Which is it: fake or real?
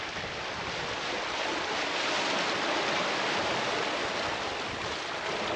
real